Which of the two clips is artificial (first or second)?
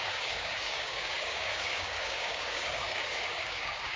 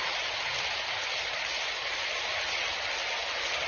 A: first